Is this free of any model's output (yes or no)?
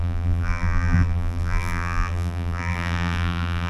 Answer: no